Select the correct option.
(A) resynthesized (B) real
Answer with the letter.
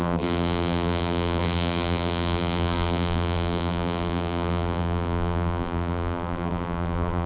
A